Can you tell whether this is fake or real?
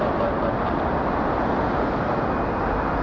real